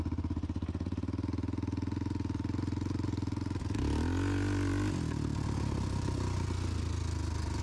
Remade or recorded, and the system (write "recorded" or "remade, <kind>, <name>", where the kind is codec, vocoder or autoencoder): recorded